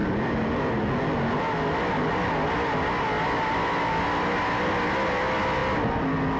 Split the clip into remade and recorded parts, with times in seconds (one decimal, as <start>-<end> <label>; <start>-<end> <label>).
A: 0.0-6.4 recorded